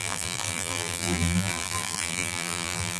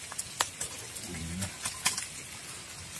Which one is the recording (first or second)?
second